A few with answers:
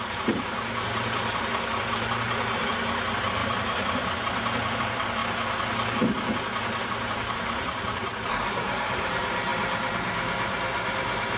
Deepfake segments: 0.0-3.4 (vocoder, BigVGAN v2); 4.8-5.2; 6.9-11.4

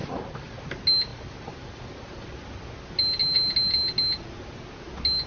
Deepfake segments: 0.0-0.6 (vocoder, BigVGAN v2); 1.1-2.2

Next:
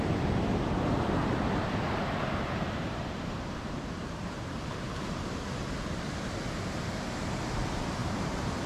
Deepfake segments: 1.2-5.7 (vocoder, BigVGAN v2); 8.0-8.7